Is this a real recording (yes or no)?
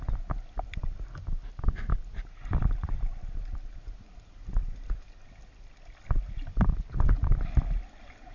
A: yes